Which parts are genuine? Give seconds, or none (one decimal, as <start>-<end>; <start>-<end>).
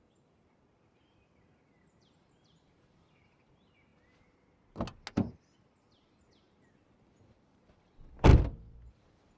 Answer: 3.9-6.3; 8.3-8.9